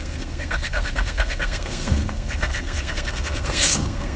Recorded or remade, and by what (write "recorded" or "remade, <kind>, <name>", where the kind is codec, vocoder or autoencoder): remade, codec, SNAC